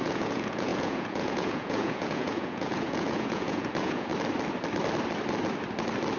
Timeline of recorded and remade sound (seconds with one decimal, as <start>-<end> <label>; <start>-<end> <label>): 0.0-4.1 remade; 4.1-6.2 recorded